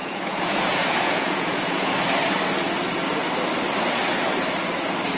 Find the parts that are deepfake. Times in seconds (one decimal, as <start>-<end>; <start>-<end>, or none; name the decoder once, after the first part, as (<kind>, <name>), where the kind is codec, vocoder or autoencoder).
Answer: 0.0-1.9 (vocoder, Vocos)